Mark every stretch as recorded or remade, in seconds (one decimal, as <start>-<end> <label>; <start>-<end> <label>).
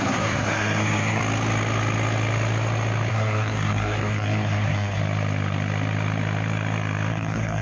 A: 0.0-1.2 remade; 1.2-3.1 recorded; 3.1-5.0 remade; 5.0-7.1 recorded; 7.1-7.6 remade